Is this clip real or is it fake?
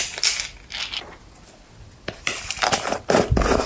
real